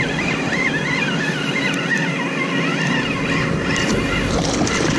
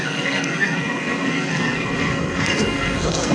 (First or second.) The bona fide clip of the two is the first